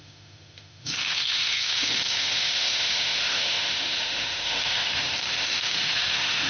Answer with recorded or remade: remade